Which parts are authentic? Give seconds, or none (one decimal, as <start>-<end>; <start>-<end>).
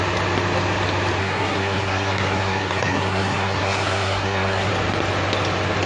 0.0-1.2; 4.7-5.9